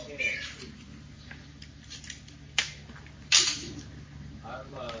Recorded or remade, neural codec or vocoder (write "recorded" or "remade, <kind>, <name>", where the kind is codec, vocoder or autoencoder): recorded